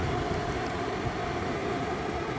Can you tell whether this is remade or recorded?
recorded